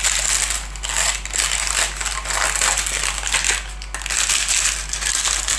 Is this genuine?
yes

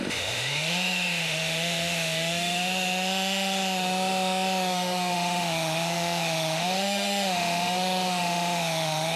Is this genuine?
no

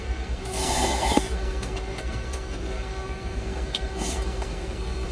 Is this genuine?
no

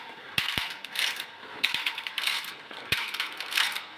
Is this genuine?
no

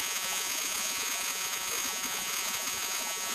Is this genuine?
no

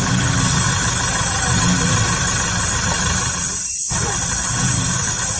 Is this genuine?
yes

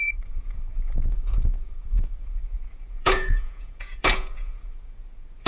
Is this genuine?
no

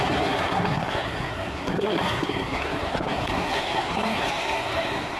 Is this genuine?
no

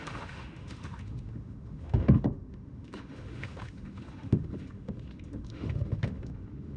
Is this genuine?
no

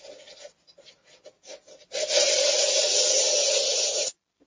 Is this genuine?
yes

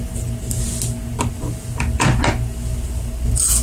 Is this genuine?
yes